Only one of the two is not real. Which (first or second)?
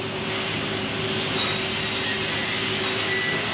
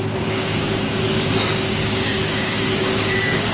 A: second